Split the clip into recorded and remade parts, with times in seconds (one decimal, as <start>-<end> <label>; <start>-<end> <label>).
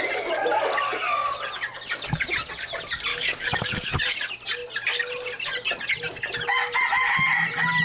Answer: 0.0-3.1 recorded; 3.1-4.0 remade; 4.0-7.8 recorded